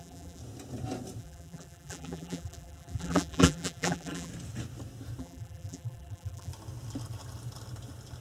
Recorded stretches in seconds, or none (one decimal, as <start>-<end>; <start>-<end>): 0.4-1.2; 4.3-5.2; 6.5-8.2